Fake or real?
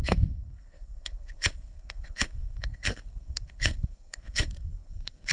fake